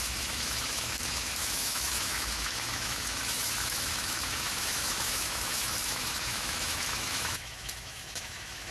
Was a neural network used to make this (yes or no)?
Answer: yes